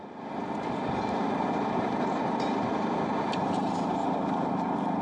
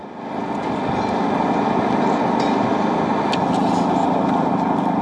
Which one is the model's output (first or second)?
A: first